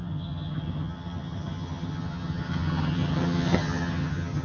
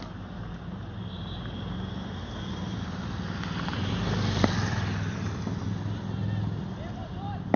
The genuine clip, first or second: second